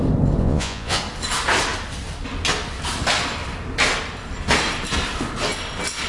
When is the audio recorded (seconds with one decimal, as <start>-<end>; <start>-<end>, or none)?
0.0-0.4; 1.0-6.1